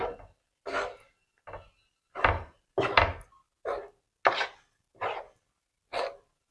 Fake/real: real